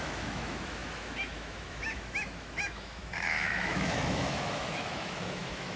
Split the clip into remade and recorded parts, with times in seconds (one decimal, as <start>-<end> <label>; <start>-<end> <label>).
0.0-5.8 remade